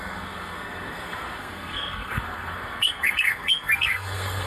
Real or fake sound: fake